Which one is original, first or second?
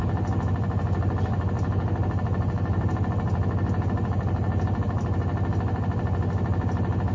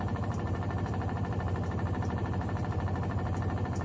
first